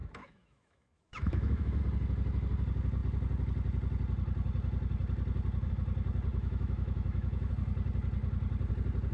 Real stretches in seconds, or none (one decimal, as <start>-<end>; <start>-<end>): 1.8-6.3; 7.5-9.1